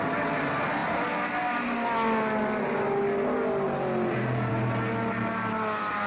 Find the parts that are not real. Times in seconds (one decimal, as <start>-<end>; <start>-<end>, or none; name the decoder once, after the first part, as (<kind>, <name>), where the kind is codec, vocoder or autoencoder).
none